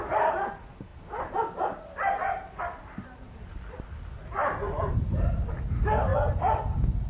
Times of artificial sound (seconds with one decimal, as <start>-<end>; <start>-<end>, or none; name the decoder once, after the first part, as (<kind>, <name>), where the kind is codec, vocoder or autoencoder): none